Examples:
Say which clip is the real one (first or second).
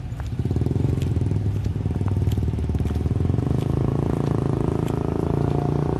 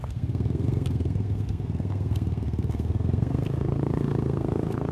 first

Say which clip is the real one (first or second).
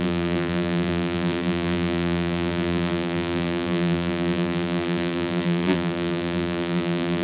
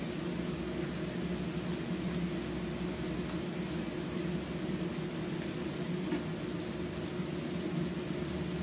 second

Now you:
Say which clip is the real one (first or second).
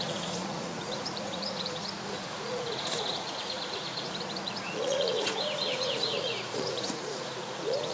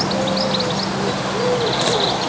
second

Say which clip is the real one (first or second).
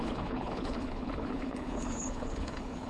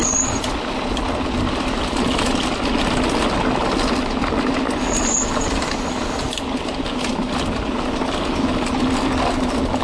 second